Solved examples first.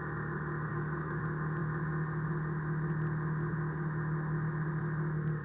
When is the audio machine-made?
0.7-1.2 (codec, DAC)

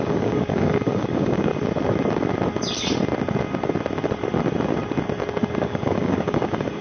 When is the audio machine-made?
0.0-1.5 (codec, DAC); 5.6-6.8